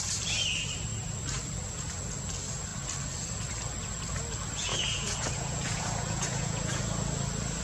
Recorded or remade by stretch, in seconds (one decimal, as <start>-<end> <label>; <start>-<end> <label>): 0.0-4.7 recorded; 4.7-6.8 remade; 6.8-7.6 recorded